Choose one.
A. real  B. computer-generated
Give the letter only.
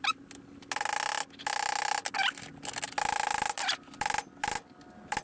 A